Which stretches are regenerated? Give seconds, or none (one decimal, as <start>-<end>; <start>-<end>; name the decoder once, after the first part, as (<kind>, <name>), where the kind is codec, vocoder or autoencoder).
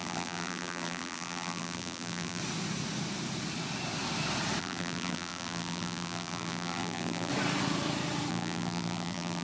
0.0-2.4 (vocoder, BigVGAN v2); 4.6-7.3; 8.3-9.4